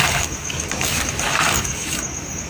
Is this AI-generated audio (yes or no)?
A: yes